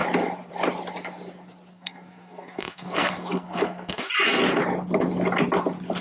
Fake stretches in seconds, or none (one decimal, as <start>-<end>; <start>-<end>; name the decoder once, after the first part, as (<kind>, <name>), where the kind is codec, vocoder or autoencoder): 1.7-4.1 (codec, SNAC)